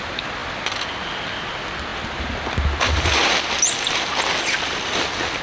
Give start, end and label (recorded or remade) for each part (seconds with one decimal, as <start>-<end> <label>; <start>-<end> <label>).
0.0-5.4 recorded